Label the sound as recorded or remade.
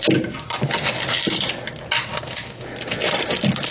recorded